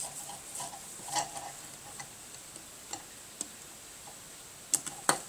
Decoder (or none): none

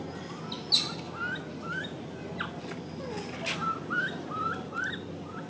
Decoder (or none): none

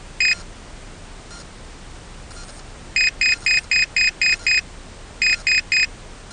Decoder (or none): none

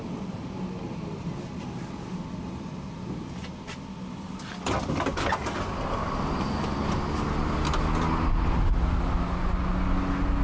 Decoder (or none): none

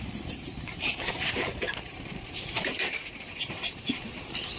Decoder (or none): vocoder, BigVGAN v2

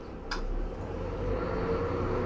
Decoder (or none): none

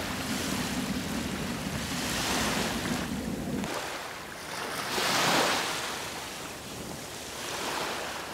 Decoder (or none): none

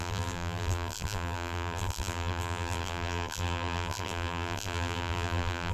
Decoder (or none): vocoder, BigVGAN v2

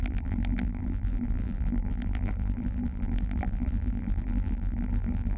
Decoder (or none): vocoder, BigVGAN v2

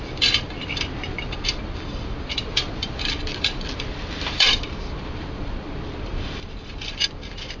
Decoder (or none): vocoder, BigVGAN v2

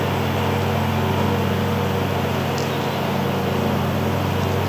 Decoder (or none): none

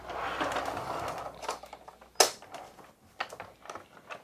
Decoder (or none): none